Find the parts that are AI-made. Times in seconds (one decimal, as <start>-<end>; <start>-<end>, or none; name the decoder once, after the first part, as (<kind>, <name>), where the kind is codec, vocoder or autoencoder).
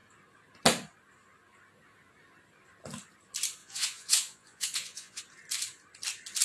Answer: 3.6-5.2 (vocoder, Vocos)